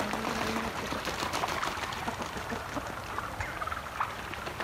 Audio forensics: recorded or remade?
recorded